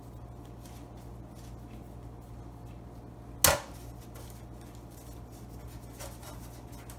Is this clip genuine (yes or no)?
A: yes